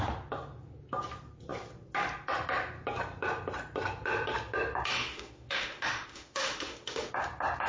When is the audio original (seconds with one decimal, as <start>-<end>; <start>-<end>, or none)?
0.0-4.9; 7.1-7.7